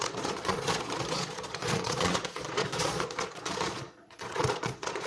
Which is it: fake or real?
fake